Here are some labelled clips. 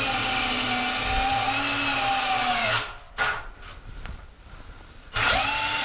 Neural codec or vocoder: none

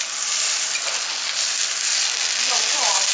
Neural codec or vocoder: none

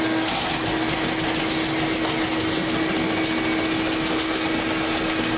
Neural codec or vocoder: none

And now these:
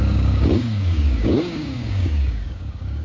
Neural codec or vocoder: codec, DAC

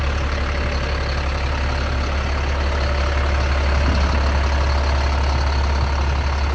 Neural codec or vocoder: none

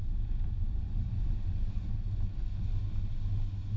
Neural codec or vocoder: none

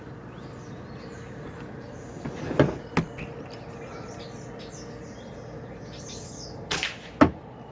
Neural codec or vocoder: none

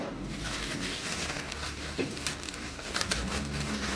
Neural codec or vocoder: codec, DAC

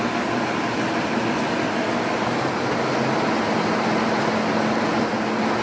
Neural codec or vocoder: none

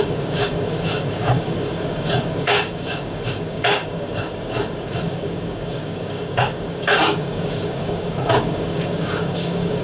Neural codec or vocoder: codec, DAC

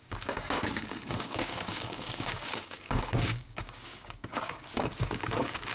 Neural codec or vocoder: codec, DAC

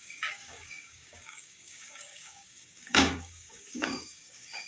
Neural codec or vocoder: codec, DAC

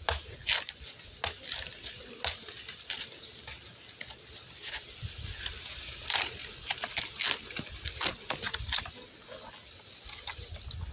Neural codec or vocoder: none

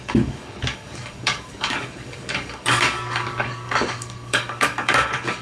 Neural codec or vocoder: codec, DAC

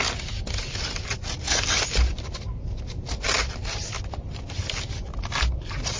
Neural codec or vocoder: none